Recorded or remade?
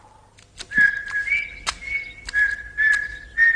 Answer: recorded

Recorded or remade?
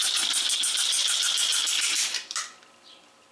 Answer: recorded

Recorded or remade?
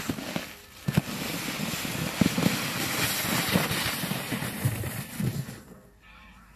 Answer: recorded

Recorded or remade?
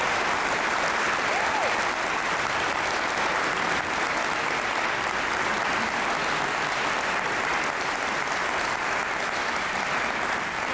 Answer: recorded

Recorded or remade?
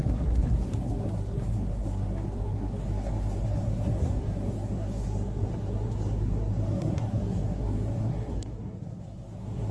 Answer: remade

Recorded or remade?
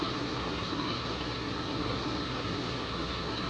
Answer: remade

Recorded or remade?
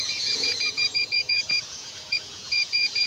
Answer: remade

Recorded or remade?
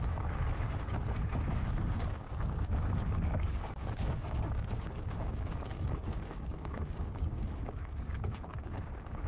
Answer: remade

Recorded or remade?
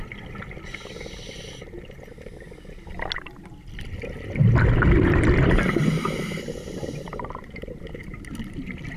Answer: recorded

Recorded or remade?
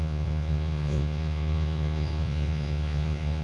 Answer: remade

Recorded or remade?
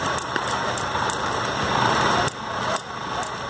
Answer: recorded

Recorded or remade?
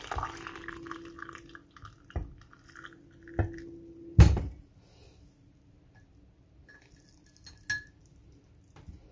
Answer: recorded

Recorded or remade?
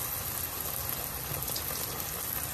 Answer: recorded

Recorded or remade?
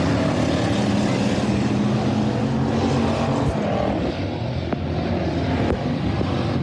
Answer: recorded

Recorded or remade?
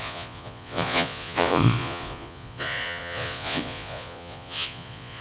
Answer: remade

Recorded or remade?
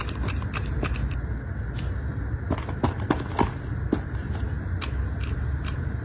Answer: recorded